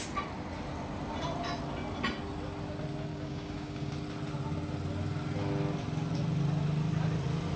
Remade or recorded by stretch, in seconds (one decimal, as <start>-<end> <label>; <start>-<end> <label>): 0.0-3.1 recorded; 3.1-3.9 remade; 3.9-7.6 recorded